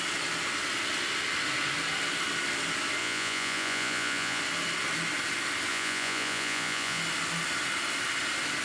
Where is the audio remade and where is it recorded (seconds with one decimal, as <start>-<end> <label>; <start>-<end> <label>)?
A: 0.0-3.0 recorded; 3.0-4.4 remade; 4.4-5.7 recorded; 5.7-7.0 remade; 7.0-8.6 recorded